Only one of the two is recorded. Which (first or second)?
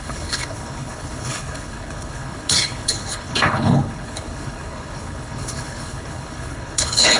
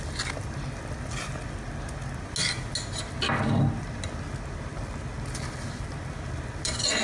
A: second